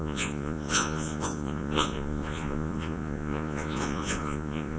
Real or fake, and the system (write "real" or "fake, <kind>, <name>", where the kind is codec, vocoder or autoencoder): fake, vocoder, Vocos